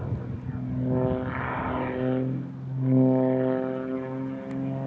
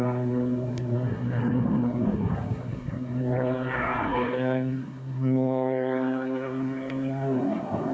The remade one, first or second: second